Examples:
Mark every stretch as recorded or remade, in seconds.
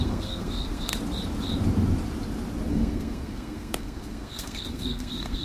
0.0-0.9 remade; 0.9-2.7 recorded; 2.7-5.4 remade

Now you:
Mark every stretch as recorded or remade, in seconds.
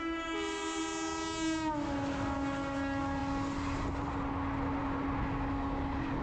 0.0-6.2 recorded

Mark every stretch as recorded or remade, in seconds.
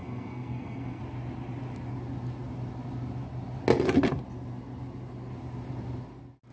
0.0-1.0 remade; 1.0-6.5 recorded